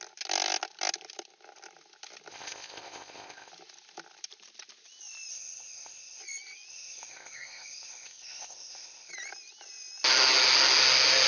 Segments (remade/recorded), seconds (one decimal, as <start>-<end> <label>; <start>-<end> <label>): 0.0-2.3 recorded; 2.3-3.5 remade; 3.5-5.3 recorded; 5.3-6.2 remade; 6.2-6.7 recorded; 6.7-9.1 remade; 9.1-11.3 recorded

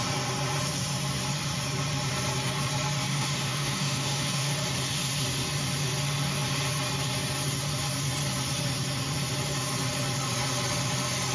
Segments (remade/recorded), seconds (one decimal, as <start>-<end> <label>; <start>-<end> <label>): 0.0-3.1 recorded; 3.1-4.5 remade; 4.5-11.3 recorded

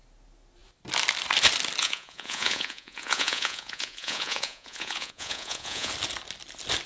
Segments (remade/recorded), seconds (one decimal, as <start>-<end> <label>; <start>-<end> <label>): 0.0-1.8 recorded; 1.8-5.9 remade; 5.9-6.9 recorded

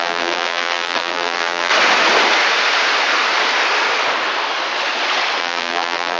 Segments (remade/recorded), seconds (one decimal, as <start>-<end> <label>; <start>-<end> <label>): 0.0-1.7 remade; 1.7-5.4 recorded; 5.4-6.2 remade

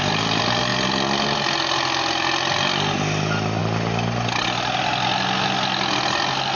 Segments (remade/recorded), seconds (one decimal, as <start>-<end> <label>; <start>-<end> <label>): 0.0-6.6 recorded